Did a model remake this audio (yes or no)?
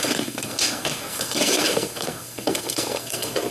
yes